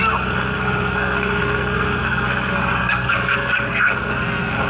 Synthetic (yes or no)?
yes